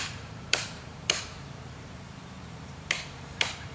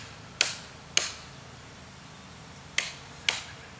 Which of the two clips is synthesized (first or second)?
first